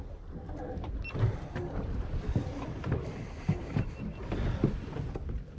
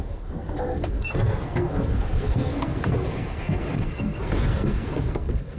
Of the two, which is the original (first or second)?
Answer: first